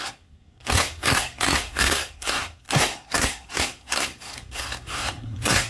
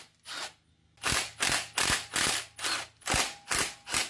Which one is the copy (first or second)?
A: first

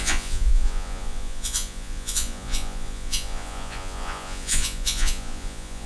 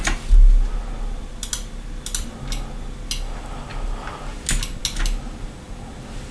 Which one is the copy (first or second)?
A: first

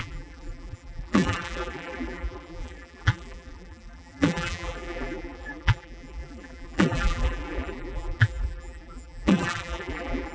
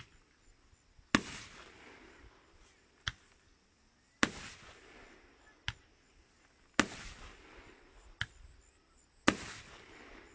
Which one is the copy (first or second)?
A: first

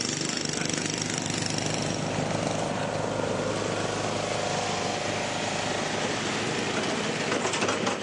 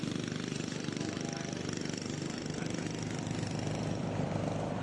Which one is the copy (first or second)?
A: second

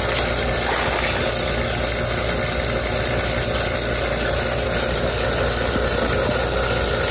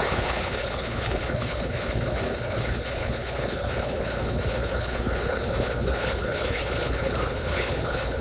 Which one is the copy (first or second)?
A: second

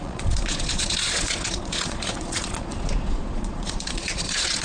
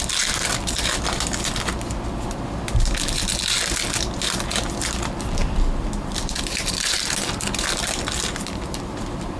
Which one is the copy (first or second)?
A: first